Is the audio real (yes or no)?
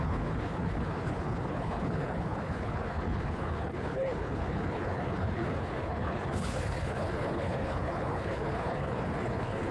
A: no